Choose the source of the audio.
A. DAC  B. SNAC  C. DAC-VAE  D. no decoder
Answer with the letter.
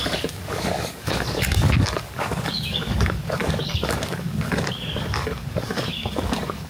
A